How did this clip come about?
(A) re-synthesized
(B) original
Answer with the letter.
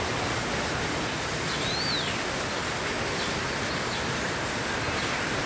B